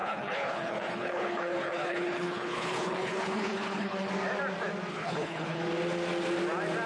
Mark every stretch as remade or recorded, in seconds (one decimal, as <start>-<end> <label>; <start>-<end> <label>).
0.0-4.1 remade; 4.1-4.9 recorded; 4.9-5.6 remade; 5.6-6.9 recorded